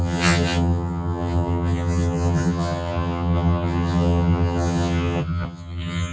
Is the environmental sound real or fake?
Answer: fake